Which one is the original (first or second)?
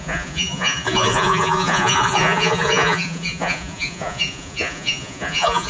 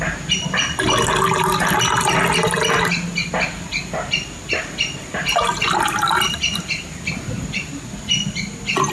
second